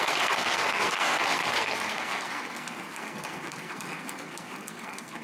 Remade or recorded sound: remade